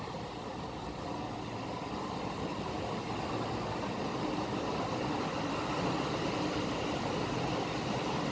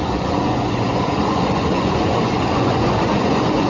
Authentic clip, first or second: first